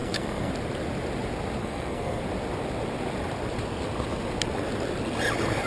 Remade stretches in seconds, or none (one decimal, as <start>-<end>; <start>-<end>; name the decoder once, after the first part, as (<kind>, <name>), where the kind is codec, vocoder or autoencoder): 0.0-0.5 (codec, SNAC); 1.6-2.2